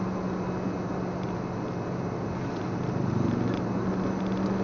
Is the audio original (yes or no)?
yes